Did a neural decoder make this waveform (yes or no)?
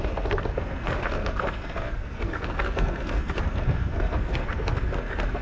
yes